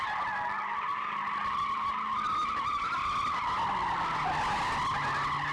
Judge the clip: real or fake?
real